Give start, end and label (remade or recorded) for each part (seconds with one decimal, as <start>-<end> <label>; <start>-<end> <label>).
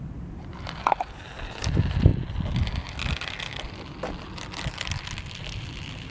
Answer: 0.0-2.1 remade; 2.1-5.4 recorded; 5.4-6.1 remade